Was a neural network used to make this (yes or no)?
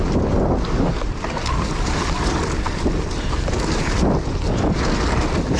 no